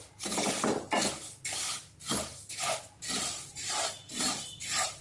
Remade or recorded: recorded